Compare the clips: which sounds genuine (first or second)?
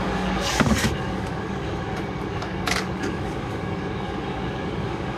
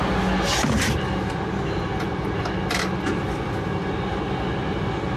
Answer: second